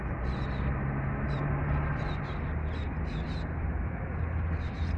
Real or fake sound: real